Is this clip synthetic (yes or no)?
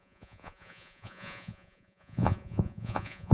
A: yes